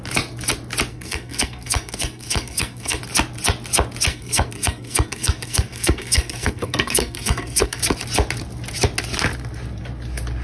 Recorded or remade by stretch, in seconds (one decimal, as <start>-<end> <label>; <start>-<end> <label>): 0.0-0.9 recorded; 0.9-3.0 remade; 3.0-4.1 recorded; 4.1-7.8 remade; 7.8-10.4 recorded